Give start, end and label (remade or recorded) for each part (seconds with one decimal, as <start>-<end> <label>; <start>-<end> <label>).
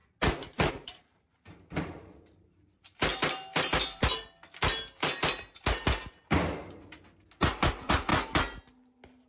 0.0-0.7 recorded; 0.7-3.1 remade; 3.1-7.7 recorded; 7.7-8.1 remade; 8.1-9.3 recorded